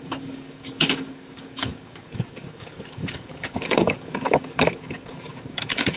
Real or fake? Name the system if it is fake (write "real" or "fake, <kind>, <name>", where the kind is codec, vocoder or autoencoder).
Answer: fake, codec, DAC